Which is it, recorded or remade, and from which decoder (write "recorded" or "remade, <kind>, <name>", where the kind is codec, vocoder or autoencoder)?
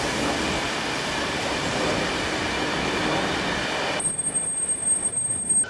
recorded